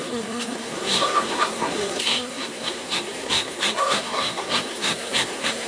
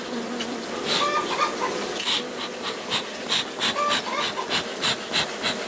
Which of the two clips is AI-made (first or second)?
first